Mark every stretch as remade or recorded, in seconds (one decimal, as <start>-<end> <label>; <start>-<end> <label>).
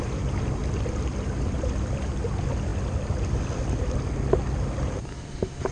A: 0.0-5.7 recorded